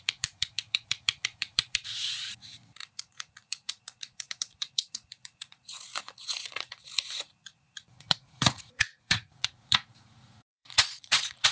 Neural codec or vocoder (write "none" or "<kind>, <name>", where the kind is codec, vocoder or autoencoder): vocoder, Vocos